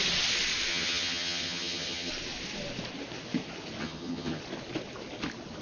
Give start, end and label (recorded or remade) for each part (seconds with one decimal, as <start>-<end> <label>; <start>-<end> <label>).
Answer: 0.0-0.7 recorded; 0.7-2.1 remade; 2.1-3.8 recorded; 3.8-4.4 remade; 4.4-5.6 recorded